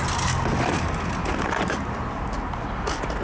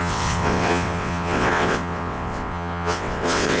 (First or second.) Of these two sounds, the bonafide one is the first